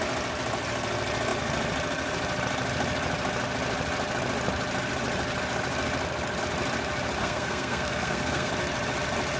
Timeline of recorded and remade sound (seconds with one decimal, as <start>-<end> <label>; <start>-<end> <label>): 0.0-7.2 recorded; 7.2-8.5 remade; 8.5-9.4 recorded